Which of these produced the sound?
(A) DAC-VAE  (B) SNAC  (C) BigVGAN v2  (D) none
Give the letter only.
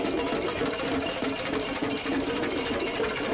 C